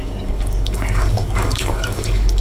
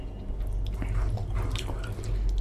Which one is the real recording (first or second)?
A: second